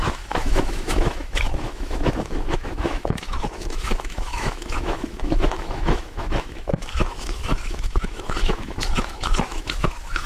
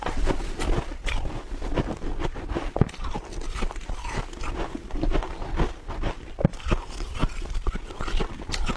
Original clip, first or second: second